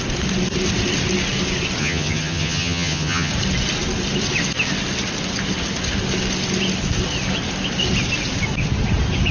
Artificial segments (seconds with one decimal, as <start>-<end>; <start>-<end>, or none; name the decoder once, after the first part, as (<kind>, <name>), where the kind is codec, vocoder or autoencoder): 1.8-3.3 (vocoder, HiFi-GAN)

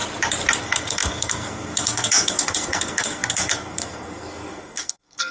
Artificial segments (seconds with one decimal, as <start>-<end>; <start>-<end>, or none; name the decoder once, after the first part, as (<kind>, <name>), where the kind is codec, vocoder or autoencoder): 0.6-5.3 (codec, SNAC)